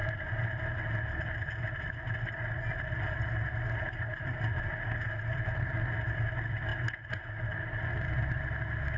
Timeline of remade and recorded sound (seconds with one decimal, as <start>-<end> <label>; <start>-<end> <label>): 0.0-9.0 recorded